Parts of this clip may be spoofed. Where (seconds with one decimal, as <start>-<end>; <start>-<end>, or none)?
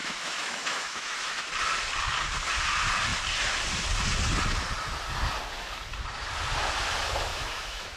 0.0-1.5; 7.3-8.0